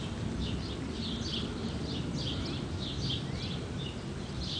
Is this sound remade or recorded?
recorded